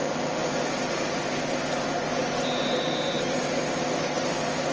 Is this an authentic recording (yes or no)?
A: yes